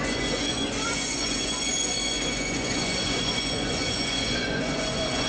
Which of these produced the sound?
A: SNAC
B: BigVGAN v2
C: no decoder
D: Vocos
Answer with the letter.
D